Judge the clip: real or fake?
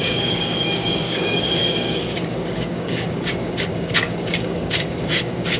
fake